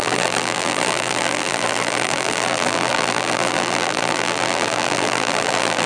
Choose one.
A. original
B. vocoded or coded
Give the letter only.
B